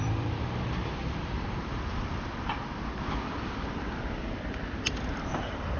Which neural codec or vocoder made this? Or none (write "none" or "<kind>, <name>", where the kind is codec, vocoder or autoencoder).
vocoder, BigVGAN v2